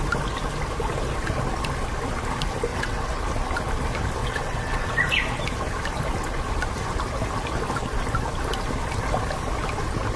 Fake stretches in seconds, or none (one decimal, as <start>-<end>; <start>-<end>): 2.7-3.2; 4.2-4.9

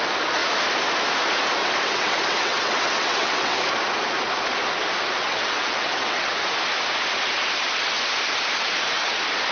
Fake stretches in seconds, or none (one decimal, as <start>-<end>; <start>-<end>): 1.6-3.6; 5.2-6.3